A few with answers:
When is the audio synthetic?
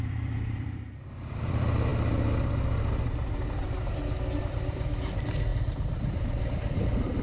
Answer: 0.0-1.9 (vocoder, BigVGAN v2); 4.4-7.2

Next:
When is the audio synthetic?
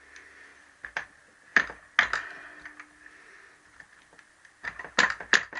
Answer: 0.5-1.1 (vocoder, BigVGAN v2)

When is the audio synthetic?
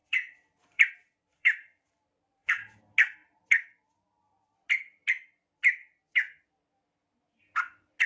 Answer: 0.0-2.8 (vocoder, BigVGAN v2)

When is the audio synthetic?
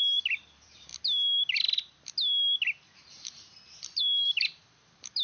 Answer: 0.0-0.9 (vocoder, BigVGAN v2); 4.0-5.2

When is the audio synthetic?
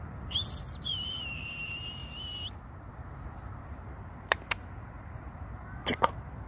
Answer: 0.0-2.0 (vocoder, BigVGAN v2); 3.6-6.5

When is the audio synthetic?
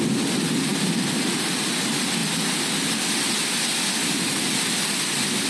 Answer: 0.7-1.6 (vocoder, BigVGAN v2)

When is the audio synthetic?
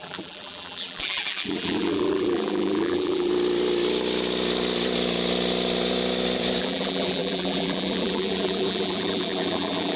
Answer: 0.0-3.3 (vocoder, BigVGAN v2); 6.6-10.0